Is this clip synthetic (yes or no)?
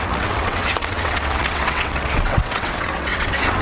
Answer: yes